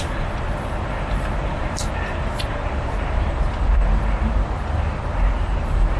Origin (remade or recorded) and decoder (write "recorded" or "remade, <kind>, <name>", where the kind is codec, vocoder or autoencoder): remade, vocoder, BigVGAN v2